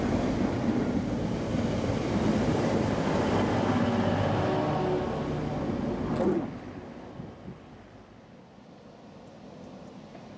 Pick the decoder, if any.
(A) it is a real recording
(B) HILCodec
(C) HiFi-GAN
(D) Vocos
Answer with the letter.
A